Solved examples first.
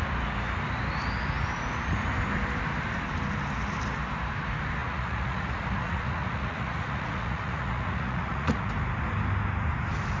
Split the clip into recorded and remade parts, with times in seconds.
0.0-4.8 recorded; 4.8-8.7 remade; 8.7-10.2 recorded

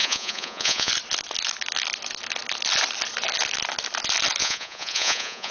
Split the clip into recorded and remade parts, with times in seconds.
0.0-0.9 remade; 0.9-4.4 recorded; 4.4-5.5 remade

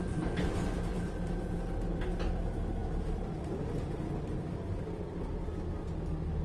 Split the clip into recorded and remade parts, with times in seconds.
0.0-6.4 recorded

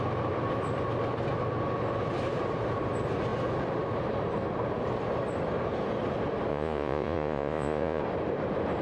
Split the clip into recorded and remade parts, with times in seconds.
0.0-6.5 recorded; 6.5-8.0 remade; 8.0-8.8 recorded

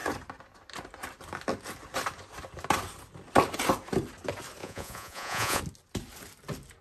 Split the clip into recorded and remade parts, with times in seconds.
0.0-4.6 recorded; 4.6-5.6 remade; 5.6-6.8 recorded